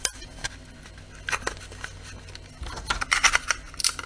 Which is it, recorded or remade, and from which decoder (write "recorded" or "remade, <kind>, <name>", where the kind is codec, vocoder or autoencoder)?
recorded